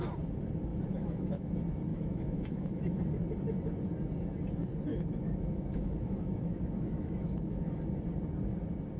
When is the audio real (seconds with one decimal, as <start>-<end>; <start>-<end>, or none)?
0.0-0.7; 1.5-1.9; 3.0-4.9; 7.8-9.0